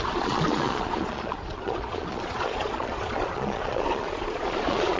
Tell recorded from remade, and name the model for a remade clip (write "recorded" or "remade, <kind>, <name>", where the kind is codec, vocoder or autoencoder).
remade, vocoder, Vocos